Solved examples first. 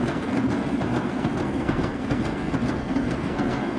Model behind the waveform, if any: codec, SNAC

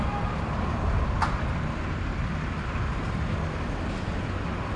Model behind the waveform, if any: none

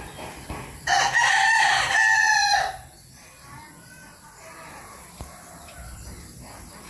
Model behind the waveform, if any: none